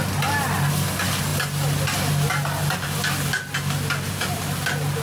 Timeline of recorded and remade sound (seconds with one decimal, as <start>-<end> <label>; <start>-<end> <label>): 0.0-5.0 recorded